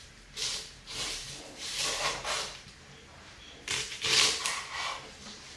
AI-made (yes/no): yes